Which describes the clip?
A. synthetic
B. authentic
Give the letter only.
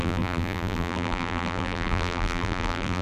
A